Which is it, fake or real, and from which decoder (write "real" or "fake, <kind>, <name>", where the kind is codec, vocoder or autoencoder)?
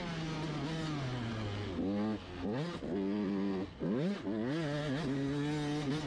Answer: real